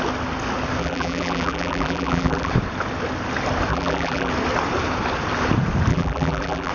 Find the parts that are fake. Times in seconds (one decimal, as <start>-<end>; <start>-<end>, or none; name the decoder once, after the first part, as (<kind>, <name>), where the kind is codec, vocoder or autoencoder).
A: 0.8-2.5 (vocoder, BigVGAN v2); 3.7-4.3; 5.9-6.7